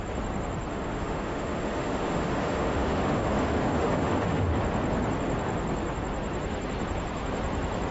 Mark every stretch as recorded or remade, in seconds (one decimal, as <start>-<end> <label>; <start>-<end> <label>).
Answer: 0.0-0.7 recorded; 0.7-4.5 remade; 4.5-7.9 recorded